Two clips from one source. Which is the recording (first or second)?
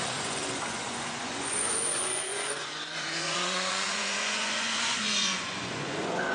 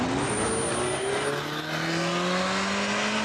second